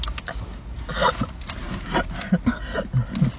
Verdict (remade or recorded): recorded